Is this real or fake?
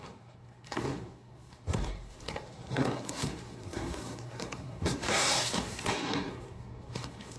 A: fake